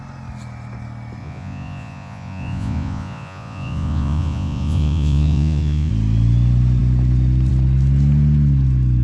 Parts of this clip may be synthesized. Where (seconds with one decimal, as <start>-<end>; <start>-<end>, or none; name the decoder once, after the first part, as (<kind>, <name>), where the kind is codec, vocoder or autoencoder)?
1.2-5.9 (vocoder, Vocos)